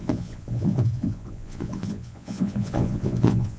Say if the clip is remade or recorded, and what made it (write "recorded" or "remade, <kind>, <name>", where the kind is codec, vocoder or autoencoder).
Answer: remade, vocoder, Vocos